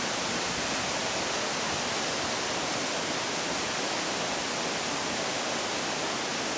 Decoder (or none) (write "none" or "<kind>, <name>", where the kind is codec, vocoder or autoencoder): none